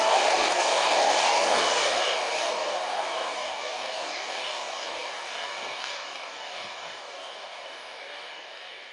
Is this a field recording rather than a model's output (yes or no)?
no